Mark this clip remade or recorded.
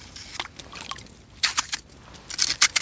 recorded